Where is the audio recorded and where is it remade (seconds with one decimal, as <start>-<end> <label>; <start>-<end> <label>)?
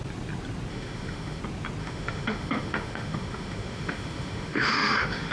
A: 0.0-0.7 recorded; 0.7-1.4 remade; 1.4-1.8 recorded; 1.8-5.3 remade